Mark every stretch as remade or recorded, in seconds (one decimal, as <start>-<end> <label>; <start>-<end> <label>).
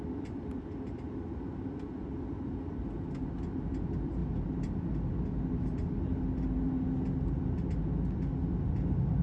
0.0-9.2 recorded